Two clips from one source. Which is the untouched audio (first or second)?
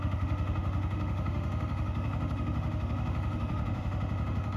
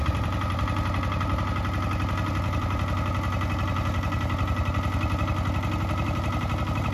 second